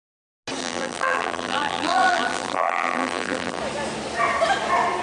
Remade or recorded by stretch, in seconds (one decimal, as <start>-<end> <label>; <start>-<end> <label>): 0.0-0.6 recorded; 0.6-3.6 remade; 3.6-5.0 recorded